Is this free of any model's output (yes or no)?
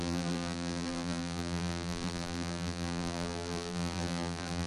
no